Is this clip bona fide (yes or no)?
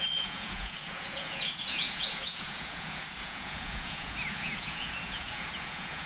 no